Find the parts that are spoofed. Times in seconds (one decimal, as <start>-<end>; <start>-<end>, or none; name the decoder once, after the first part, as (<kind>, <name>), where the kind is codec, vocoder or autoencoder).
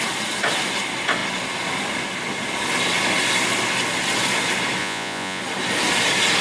4.8-5.4 (vocoder, Vocos)